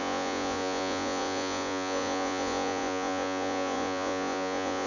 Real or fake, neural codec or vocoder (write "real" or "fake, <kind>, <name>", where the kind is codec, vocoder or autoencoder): fake, vocoder, Vocos